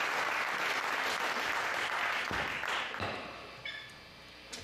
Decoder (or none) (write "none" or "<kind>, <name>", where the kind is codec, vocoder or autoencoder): none